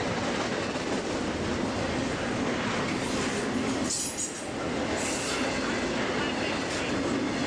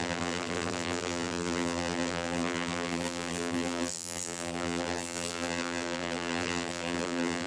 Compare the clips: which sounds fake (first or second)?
second